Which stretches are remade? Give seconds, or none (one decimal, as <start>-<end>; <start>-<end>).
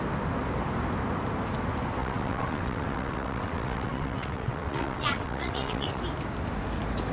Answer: 2.0-6.0